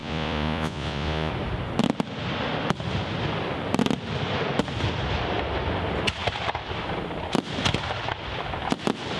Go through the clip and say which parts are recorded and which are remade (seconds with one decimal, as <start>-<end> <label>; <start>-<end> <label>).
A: 0.0-1.3 remade; 1.3-9.2 recorded